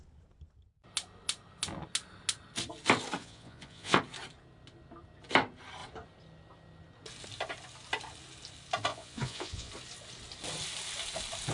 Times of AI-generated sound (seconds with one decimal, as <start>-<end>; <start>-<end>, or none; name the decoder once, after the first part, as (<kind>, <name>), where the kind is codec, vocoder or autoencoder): 3.2-4.0 (vocoder, Vocos); 8.9-9.7